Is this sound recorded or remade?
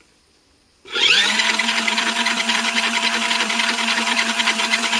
remade